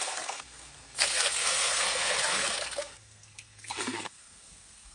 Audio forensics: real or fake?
fake